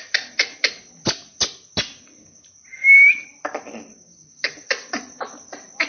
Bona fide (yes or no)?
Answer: yes